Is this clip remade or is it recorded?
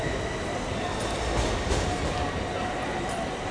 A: recorded